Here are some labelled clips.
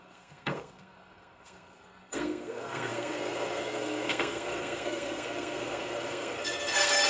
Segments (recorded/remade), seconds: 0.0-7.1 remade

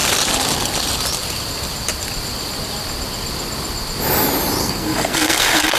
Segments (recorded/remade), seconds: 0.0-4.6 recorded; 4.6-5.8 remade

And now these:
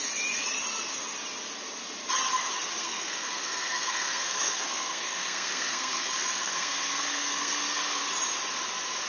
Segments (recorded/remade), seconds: 0.0-2.8 recorded; 2.8-8.0 remade; 8.0-9.1 recorded